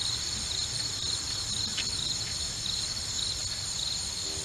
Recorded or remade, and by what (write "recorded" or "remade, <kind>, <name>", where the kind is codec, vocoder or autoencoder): recorded